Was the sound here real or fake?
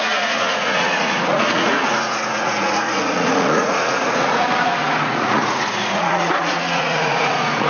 fake